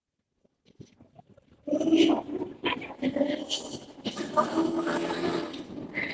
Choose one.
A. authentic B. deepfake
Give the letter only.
A